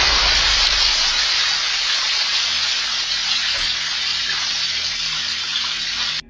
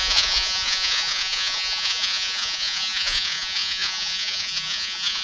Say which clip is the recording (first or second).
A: first